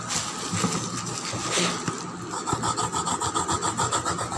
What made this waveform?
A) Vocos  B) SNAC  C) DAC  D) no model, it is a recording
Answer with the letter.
D